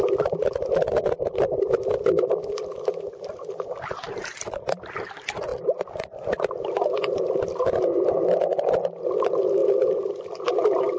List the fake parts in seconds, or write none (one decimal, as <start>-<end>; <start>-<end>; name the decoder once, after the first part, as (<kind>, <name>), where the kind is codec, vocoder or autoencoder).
none